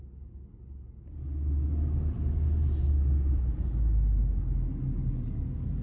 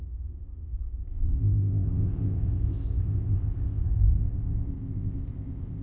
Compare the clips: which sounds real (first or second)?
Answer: first